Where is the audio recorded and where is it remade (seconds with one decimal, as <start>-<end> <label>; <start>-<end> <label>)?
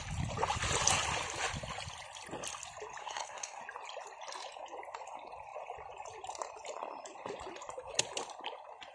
0.0-3.0 recorded; 3.0-3.6 remade; 3.6-8.9 recorded